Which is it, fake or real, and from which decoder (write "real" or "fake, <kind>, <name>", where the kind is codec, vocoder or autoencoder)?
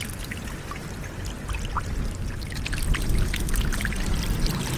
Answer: real